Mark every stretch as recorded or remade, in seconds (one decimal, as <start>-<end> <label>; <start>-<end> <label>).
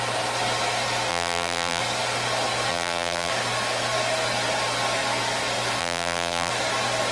0.0-1.1 recorded; 1.1-1.8 remade; 1.8-2.7 recorded; 2.7-3.3 remade; 3.3-5.8 recorded; 5.8-6.5 remade; 6.5-7.1 recorded